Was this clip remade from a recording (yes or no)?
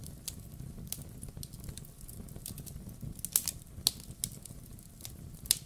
no